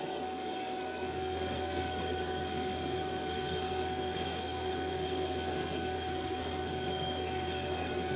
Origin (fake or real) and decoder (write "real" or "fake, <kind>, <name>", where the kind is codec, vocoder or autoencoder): fake, codec, SNAC